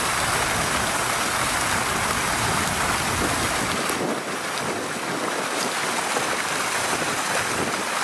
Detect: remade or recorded recorded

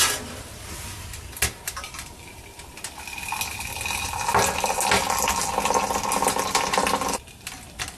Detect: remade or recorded recorded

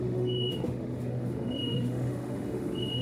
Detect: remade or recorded remade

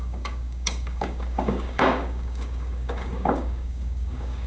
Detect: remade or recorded remade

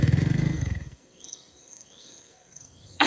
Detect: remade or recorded remade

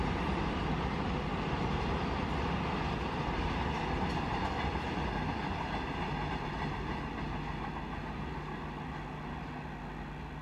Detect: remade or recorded recorded